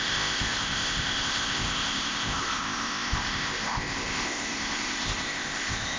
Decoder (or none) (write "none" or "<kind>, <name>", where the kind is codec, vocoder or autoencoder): codec, ZipCodec